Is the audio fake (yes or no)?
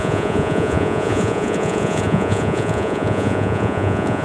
yes